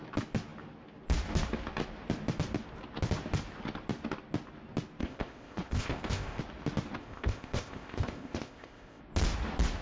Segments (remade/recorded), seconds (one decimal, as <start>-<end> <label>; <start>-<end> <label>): 0.0-5.0 recorded; 5.0-6.4 remade; 6.4-7.0 recorded; 7.0-9.0 remade; 9.0-9.8 recorded